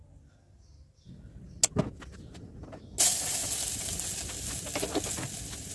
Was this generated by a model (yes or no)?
no